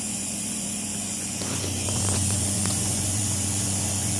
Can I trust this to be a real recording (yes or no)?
no